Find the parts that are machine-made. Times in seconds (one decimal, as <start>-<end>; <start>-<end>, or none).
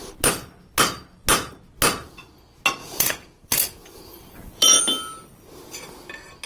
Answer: 2.8-4.8